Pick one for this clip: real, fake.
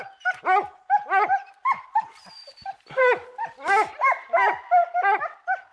real